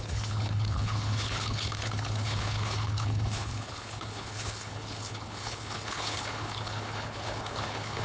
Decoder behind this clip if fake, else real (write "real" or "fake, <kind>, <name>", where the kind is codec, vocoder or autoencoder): fake, codec, HILCodec